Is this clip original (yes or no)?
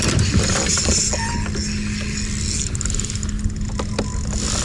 yes